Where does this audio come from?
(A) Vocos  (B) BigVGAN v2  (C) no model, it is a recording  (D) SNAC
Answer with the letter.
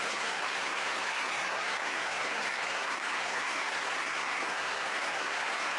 D